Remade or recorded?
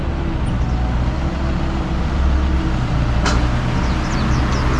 recorded